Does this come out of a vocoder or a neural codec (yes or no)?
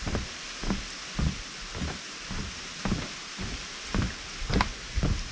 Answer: no